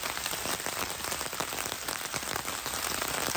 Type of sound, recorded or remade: recorded